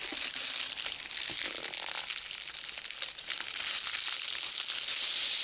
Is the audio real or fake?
real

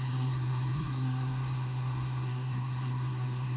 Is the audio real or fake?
fake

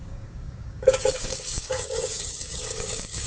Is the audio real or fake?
fake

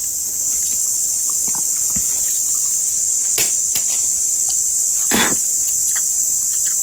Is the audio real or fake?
real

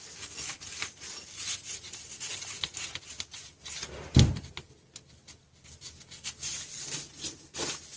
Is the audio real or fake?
real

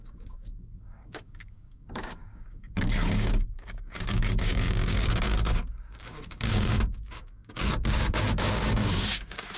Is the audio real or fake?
fake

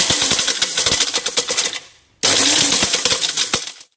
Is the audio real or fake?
real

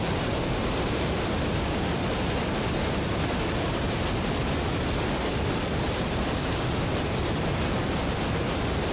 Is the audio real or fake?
fake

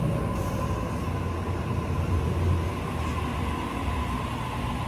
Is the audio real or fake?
real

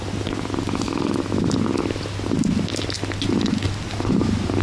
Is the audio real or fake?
real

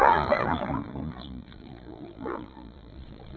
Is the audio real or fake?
fake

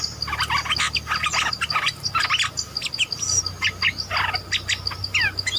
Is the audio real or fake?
real